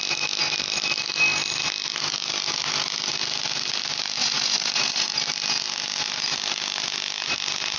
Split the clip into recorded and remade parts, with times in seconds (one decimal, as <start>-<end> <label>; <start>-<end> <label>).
0.0-4.2 recorded; 4.2-5.2 remade; 5.2-7.8 recorded